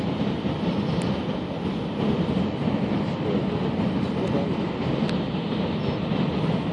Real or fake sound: fake